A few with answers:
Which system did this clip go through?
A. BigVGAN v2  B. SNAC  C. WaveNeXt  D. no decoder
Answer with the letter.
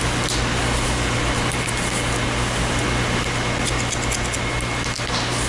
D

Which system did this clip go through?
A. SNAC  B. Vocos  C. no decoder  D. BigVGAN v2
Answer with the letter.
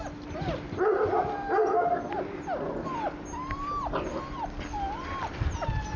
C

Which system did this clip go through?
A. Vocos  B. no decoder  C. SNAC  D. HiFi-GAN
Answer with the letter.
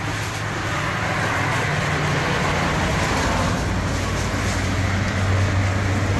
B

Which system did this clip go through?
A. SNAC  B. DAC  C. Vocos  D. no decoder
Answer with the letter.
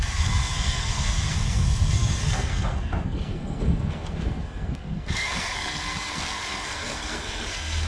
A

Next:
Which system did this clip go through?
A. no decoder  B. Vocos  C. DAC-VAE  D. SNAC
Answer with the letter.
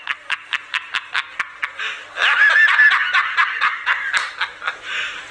A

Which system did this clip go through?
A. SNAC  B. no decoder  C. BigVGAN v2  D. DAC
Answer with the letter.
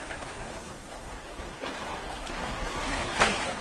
A